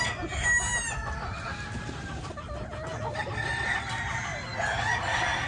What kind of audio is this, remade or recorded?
recorded